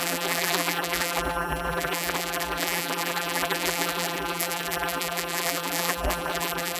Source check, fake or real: fake